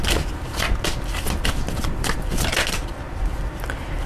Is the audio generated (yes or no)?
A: no